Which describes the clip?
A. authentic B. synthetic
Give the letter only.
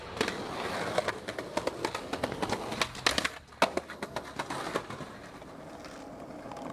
A